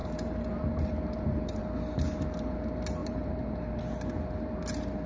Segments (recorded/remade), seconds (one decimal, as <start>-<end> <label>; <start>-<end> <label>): 0.0-1.6 remade; 1.6-3.0 recorded; 3.0-3.8 remade; 3.8-5.1 recorded